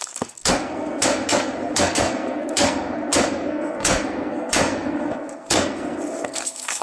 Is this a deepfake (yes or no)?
yes